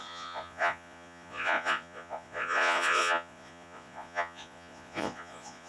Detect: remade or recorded remade